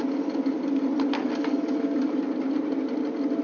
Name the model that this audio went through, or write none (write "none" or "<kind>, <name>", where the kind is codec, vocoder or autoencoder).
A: none